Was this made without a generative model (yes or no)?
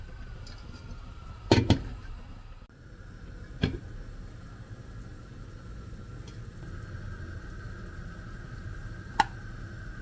yes